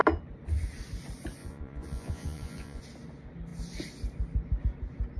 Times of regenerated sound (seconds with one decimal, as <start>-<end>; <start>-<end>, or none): 1.4-2.8

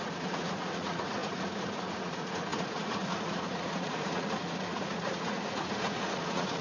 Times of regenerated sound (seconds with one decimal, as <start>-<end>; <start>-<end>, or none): 0.0-6.6